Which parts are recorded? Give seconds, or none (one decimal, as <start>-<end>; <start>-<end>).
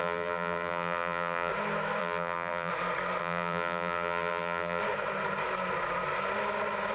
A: 1.5-2.0; 2.7-3.2; 4.8-6.9